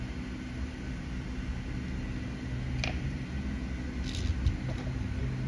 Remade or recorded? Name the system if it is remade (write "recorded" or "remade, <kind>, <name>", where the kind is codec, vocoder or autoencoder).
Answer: recorded